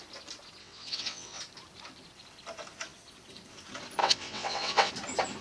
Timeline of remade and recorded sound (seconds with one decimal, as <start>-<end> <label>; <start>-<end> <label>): 0.0-0.6 recorded; 0.6-1.4 remade; 1.4-4.0 recorded; 4.0-4.9 remade; 4.9-5.4 recorded